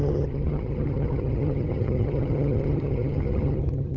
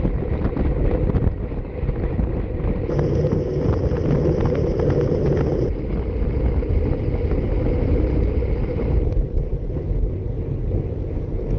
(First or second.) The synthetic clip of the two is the first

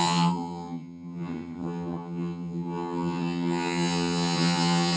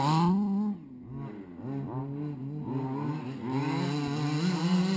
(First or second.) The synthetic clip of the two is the first